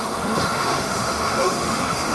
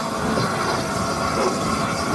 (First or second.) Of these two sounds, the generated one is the first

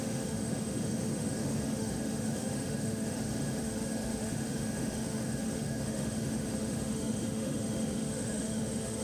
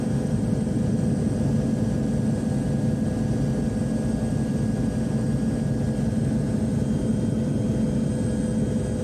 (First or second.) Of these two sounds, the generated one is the first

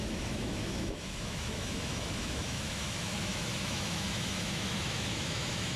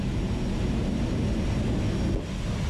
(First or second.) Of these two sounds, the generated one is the first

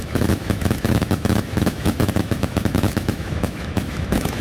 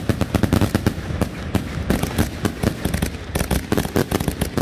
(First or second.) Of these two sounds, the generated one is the first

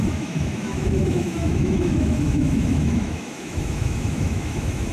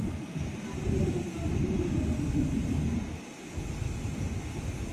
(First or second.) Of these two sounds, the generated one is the first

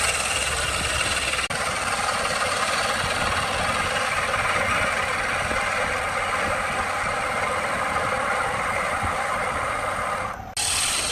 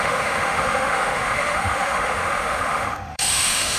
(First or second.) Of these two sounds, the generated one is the second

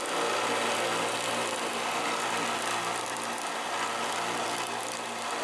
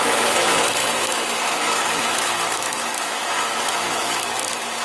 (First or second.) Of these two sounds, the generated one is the second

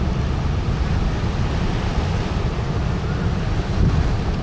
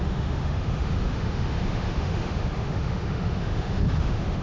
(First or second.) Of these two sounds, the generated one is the second